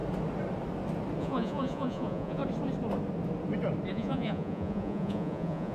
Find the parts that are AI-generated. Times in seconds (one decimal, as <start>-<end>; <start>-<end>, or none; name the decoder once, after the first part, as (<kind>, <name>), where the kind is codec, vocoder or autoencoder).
1.2-2.4 (vocoder, Vocos); 3.9-5.7